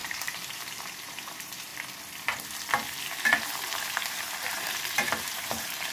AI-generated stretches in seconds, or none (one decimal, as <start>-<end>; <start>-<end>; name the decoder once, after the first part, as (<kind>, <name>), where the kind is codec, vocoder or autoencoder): 0.0-1.7 (vocoder, BigVGAN v2); 3.9-5.9